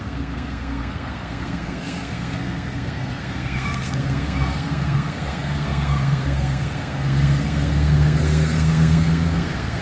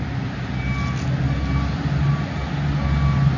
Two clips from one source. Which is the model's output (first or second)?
first